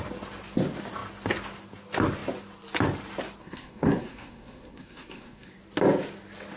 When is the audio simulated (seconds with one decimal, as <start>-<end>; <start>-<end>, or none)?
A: 3.4-5.6